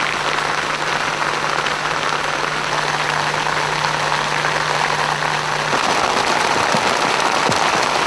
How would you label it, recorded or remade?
recorded